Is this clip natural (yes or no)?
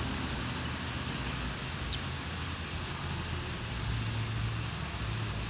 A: yes